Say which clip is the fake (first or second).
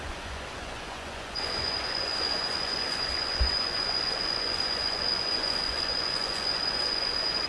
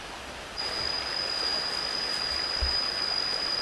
first